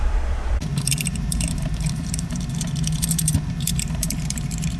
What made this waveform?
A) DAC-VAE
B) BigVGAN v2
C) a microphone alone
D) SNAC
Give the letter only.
B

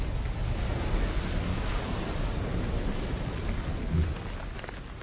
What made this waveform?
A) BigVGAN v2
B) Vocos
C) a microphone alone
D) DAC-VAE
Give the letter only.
C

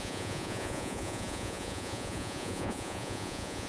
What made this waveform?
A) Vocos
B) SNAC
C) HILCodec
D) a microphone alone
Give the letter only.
A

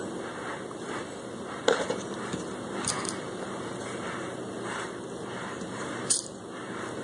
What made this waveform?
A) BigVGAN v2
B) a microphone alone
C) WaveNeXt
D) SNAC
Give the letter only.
A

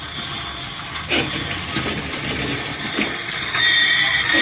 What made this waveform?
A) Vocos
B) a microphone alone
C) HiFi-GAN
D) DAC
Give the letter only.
B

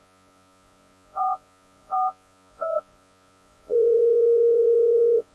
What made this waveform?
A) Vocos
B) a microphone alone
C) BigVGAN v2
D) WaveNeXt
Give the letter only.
A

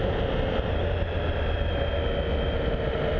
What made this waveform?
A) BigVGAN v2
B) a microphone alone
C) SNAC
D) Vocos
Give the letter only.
B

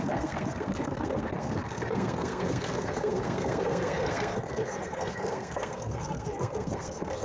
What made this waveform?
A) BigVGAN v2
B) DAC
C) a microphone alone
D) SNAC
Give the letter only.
D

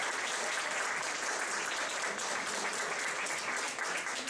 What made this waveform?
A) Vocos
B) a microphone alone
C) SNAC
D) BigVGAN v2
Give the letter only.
B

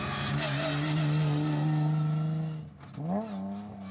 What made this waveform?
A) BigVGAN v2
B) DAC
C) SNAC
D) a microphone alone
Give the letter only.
D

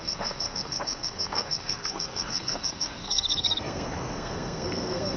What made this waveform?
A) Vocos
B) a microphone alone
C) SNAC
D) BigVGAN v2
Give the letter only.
C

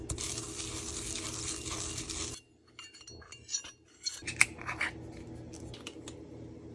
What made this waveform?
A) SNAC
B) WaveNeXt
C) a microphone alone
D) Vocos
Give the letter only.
C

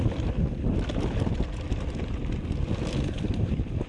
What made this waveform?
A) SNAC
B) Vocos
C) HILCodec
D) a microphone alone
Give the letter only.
D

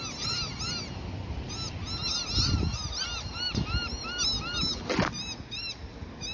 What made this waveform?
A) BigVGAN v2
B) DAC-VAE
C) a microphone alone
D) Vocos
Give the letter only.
C